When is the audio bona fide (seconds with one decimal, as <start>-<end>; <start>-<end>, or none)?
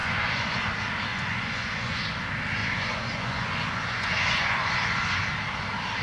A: 0.6-1.1; 2.0-2.6; 5.2-6.0